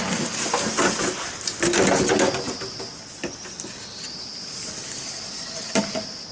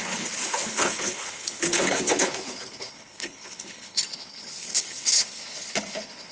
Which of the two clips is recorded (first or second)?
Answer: first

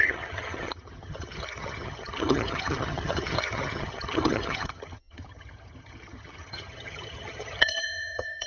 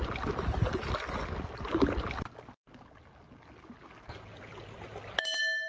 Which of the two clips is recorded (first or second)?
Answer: second